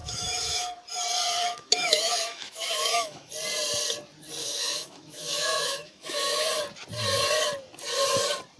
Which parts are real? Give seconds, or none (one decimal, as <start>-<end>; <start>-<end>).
0.8-1.4; 3.3-4.4; 6.5-8.6